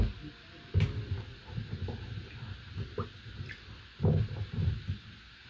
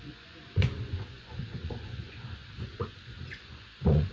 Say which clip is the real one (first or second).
first